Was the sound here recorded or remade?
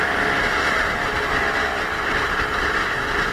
recorded